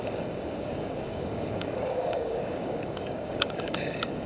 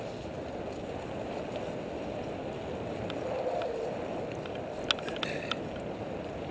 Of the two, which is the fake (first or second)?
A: first